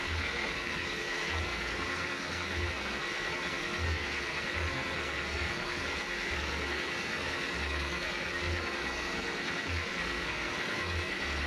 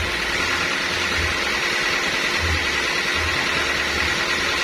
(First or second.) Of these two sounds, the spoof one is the first